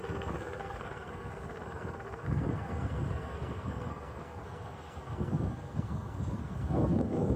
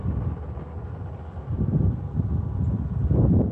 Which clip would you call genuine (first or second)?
second